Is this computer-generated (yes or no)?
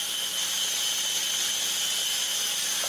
no